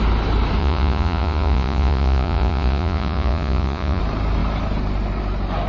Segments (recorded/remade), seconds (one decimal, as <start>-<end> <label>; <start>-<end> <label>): 0.0-0.6 recorded; 0.6-4.0 remade; 4.0-5.7 recorded